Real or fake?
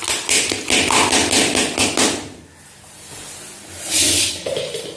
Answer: real